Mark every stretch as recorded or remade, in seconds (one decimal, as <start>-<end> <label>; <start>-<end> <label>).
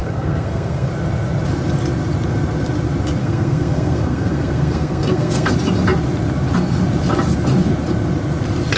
0.0-0.9 remade; 0.9-3.2 recorded; 3.2-5.5 remade; 5.5-8.8 recorded